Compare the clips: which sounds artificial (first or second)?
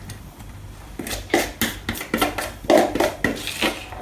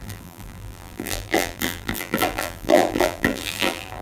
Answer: second